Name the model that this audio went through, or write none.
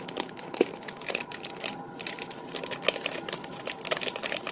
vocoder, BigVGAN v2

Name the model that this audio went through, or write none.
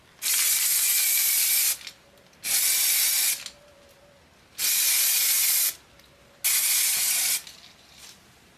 none